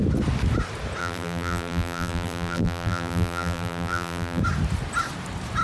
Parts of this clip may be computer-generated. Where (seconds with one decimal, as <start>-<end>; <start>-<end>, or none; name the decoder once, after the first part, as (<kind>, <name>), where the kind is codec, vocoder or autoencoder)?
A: 1.0-4.4 (vocoder, BigVGAN v2)